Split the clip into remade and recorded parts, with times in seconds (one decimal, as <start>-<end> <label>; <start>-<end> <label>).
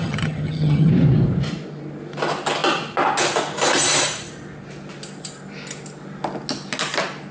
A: 0.0-0.9 remade; 0.9-7.3 recorded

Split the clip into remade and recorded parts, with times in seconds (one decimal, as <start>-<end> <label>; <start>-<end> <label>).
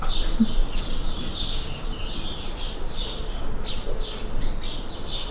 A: 0.0-5.3 recorded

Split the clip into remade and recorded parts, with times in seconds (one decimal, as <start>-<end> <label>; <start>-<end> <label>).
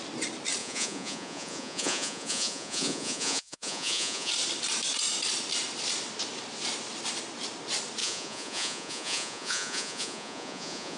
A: 0.0-0.6 recorded; 0.6-4.3 remade; 4.3-8.0 recorded; 8.0-11.0 remade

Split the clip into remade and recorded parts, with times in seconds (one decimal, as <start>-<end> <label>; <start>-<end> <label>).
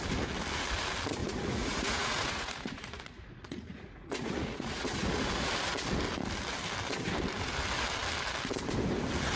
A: 0.0-1.2 recorded; 1.2-5.5 remade; 5.5-9.4 recorded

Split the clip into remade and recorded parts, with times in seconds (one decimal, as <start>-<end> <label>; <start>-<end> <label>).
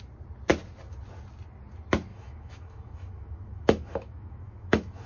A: 0.0-2.1 recorded; 2.1-5.1 remade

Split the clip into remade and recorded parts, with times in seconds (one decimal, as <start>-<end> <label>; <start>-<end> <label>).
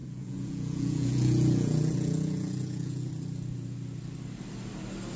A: 0.0-3.1 remade; 3.1-5.2 recorded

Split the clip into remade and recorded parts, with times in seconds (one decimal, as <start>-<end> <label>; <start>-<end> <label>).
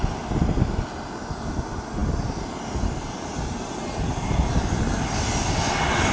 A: 0.0-6.1 recorded